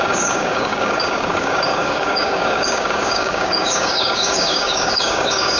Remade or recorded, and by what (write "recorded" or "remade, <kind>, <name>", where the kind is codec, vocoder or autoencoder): remade, codec, DAC